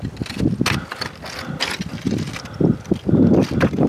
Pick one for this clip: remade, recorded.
recorded